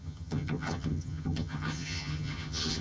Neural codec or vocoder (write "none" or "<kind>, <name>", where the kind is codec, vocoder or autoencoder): vocoder, HiFi-GAN